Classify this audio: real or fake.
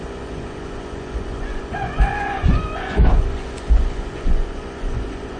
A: fake